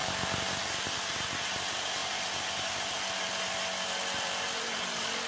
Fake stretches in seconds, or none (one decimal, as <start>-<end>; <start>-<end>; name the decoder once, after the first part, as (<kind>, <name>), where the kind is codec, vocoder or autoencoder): 0.0-0.7 (vocoder, BigVGAN v2); 2.0-5.3